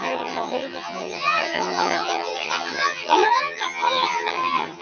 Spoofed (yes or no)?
yes